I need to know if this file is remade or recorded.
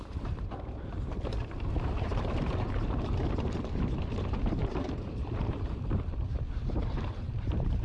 remade